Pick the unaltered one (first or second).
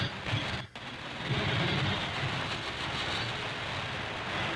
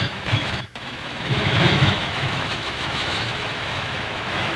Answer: first